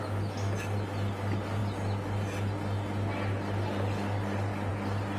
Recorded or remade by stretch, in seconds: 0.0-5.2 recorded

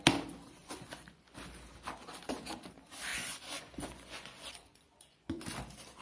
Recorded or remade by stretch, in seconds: 0.0-0.6 recorded; 0.6-1.4 remade; 1.4-3.1 recorded; 3.1-5.4 remade; 5.4-6.0 recorded

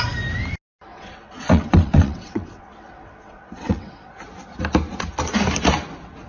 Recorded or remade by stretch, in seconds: 0.0-0.9 recorded; 0.9-4.1 remade; 4.1-6.3 recorded